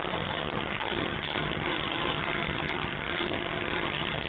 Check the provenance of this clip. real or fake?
fake